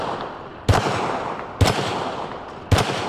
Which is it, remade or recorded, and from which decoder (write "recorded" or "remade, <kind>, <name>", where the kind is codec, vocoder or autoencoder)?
recorded